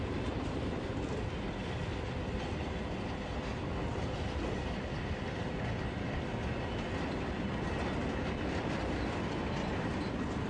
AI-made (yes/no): no